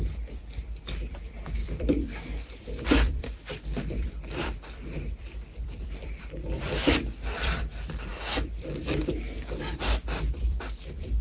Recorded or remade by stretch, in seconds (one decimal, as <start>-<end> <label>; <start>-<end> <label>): 0.0-11.2 remade